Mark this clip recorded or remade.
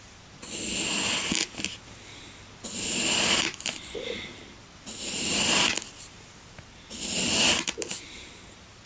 recorded